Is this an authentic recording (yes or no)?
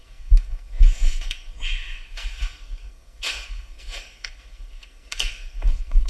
no